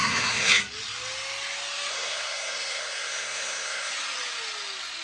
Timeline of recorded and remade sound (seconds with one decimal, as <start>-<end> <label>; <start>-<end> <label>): 0.0-0.6 remade; 0.6-1.9 recorded; 1.9-3.9 remade; 3.9-5.0 recorded